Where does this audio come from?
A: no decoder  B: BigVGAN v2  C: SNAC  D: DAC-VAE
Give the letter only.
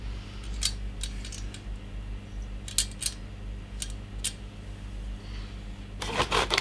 A